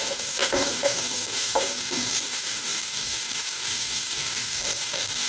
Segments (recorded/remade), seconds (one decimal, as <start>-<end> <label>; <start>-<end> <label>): 0.0-5.3 remade

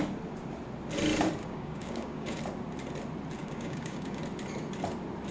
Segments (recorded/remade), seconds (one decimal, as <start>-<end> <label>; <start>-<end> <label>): 0.0-1.4 recorded; 1.4-2.4 remade; 2.4-3.4 recorded; 3.4-4.2 remade; 4.2-5.3 recorded

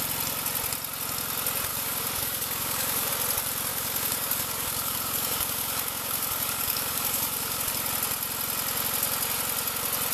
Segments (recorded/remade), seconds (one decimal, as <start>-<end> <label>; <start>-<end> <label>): 0.0-1.7 recorded; 1.7-3.1 remade; 3.1-3.7 recorded; 3.7-7.7 remade; 7.7-10.1 recorded

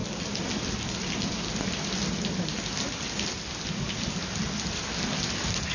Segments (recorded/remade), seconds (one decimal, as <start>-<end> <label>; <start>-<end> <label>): 0.0-5.7 recorded